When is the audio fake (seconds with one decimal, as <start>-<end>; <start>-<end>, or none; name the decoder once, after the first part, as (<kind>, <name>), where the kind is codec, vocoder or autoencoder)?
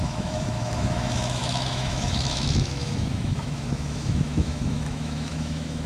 0.0-5.9 (autoencoder, DAC-VAE)